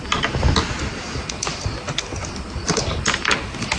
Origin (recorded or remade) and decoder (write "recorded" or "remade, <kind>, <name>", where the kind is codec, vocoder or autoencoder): recorded